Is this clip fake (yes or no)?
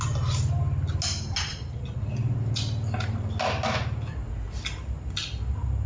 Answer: no